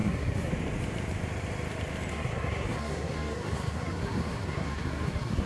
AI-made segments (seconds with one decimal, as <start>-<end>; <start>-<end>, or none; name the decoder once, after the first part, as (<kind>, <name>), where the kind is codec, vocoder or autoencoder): 0.0-0.5 (codec, SNAC); 2.1-5.5